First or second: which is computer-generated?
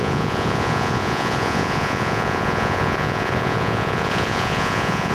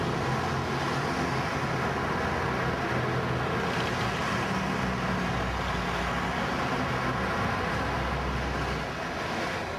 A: first